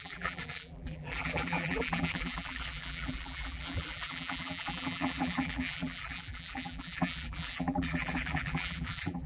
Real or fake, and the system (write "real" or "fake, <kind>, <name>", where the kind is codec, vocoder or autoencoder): fake, vocoder, BigVGAN v2